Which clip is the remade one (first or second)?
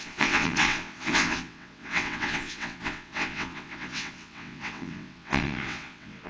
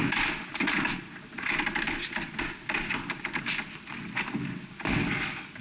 first